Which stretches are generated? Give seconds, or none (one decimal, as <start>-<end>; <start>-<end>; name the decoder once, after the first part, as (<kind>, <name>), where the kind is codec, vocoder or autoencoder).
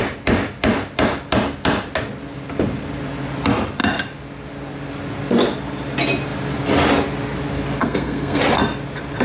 7.8-8.4 (codec, SNAC)